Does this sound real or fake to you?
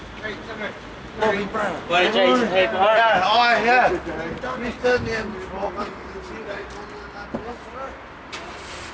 real